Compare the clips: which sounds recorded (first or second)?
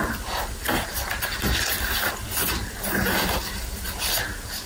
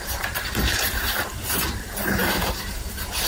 first